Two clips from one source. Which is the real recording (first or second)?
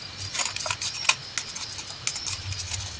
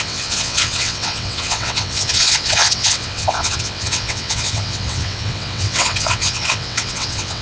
first